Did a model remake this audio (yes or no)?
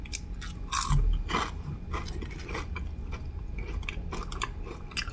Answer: no